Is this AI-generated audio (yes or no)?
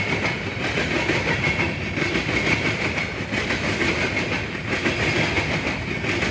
no